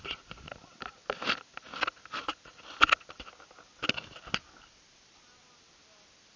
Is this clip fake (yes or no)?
no